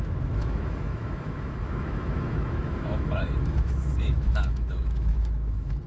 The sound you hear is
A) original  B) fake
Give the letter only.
B